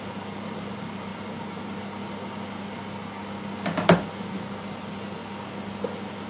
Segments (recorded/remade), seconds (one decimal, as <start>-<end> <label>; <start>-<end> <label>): 0.0-6.3 recorded